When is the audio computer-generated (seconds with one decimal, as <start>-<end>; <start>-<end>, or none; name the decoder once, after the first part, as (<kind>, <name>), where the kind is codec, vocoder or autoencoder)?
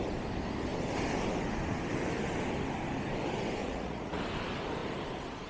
3.6-4.2 (vocoder, Vocos)